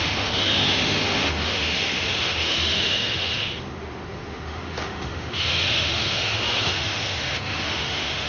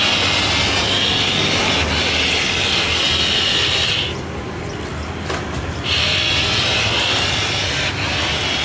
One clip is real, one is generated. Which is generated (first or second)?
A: first